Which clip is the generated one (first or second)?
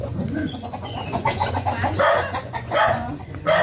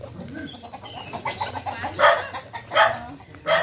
first